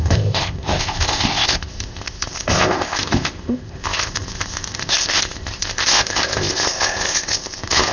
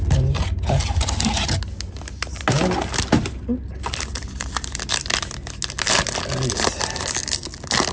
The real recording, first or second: second